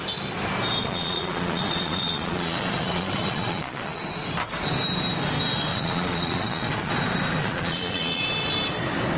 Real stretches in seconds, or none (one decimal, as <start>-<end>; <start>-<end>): 0.0-0.8; 4.0-5.7; 6.9-7.4; 8.2-9.2